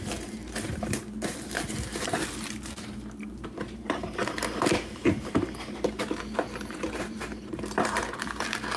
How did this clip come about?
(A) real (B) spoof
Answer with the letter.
B